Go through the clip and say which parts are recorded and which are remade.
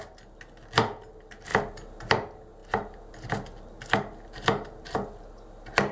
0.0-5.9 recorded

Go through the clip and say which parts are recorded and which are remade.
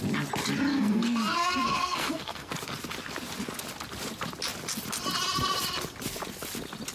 0.0-0.7 recorded; 0.7-2.5 remade; 2.5-6.9 recorded